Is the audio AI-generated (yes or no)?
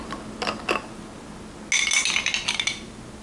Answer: no